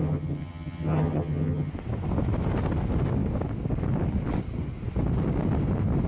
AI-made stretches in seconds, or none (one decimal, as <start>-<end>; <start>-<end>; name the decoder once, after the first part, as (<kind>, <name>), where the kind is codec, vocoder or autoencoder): 0.0-1.7 (vocoder, HiFi-GAN)